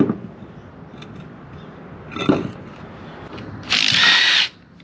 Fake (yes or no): no